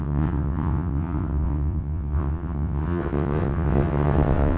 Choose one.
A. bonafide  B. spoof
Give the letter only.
B